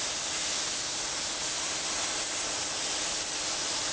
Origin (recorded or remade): recorded